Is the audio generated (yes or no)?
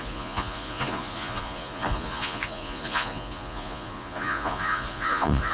yes